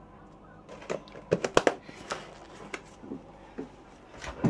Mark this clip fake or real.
real